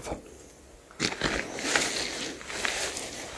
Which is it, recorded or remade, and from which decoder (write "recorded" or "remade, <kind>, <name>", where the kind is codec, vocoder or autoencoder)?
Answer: recorded